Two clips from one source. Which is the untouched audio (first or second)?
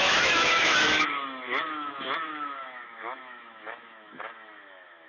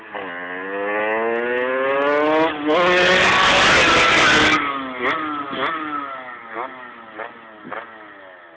second